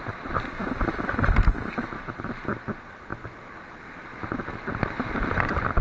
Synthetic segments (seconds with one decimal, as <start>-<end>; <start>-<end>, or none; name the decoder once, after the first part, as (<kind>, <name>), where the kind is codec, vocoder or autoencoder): none

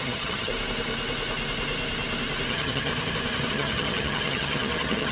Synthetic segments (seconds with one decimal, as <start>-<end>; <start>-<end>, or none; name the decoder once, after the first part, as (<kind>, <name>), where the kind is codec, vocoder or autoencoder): 0.0-0.5 (vocoder, HiFi-GAN); 2.5-2.9; 3.5-5.1